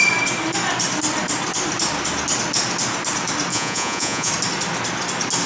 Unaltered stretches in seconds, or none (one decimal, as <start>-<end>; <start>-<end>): 0.0-3.5; 4.3-5.5